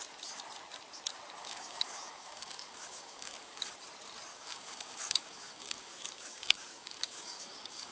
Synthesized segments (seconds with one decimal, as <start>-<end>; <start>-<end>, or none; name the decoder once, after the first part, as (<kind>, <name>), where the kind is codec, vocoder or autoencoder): 1.4-3.7 (codec, DAC); 4.3-7.9

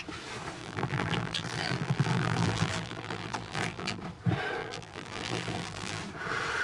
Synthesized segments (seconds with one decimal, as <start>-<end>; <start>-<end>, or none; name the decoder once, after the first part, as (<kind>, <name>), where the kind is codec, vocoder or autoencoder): 0.6-4.0 (vocoder, BigVGAN v2); 4.6-6.0

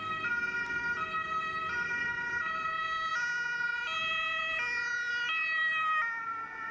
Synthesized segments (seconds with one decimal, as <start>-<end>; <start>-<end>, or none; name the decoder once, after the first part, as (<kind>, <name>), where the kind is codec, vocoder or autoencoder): none

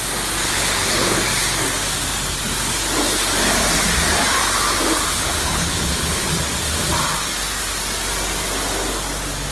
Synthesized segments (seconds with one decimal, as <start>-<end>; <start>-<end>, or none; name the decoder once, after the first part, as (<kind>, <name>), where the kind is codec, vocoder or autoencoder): 0.4-1.2 (codec, HILCodec); 5.1-6.3

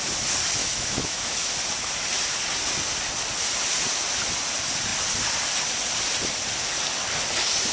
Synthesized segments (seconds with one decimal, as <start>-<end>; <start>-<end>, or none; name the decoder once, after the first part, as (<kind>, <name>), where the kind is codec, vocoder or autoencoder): 0.6-1.5 (autoencoder, DAC-VAE)

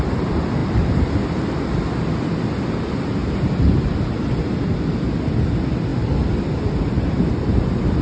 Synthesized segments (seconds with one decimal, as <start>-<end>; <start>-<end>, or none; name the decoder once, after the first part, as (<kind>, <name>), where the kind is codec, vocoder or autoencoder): none

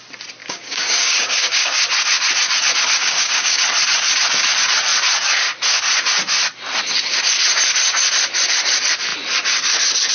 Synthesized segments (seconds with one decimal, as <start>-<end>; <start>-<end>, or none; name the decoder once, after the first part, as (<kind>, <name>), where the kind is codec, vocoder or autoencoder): 0.4-1.8 (codec, DAC); 3.0-3.6